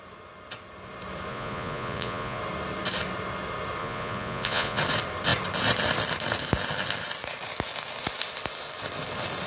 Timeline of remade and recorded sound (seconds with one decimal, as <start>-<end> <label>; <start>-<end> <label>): 0.0-1.3 recorded; 1.3-2.4 remade; 2.4-3.8 recorded; 3.8-4.8 remade; 4.8-9.5 recorded